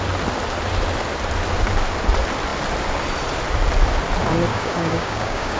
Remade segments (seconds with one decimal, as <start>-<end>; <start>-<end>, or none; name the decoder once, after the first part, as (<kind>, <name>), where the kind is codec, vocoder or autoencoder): 4.5-5.6 (codec, DAC)

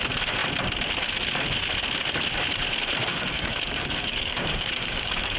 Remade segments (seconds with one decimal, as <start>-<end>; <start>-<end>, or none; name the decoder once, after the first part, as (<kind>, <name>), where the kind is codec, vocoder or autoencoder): 3.1-5.4 (codec, DAC)